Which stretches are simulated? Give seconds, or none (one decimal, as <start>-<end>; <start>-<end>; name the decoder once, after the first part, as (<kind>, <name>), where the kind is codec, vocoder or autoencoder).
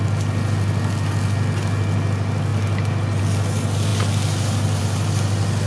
none